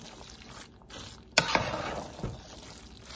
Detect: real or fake real